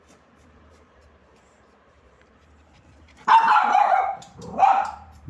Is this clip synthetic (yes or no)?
yes